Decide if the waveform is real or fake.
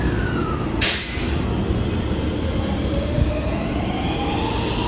real